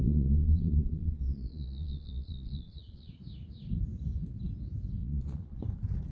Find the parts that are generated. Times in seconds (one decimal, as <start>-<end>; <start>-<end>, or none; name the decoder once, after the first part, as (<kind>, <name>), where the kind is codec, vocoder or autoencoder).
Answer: 0.0-3.1 (vocoder, Vocos); 5.0-5.6